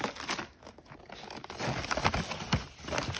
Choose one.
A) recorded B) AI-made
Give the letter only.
A